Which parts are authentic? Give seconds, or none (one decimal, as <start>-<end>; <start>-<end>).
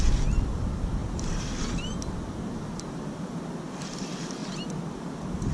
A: 0.0-5.5